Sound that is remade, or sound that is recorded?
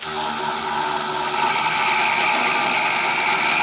recorded